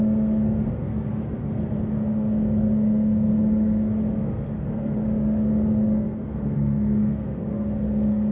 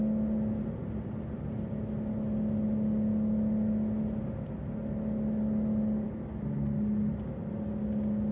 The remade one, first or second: first